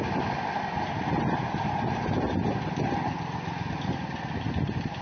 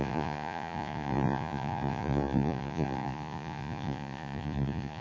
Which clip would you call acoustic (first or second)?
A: first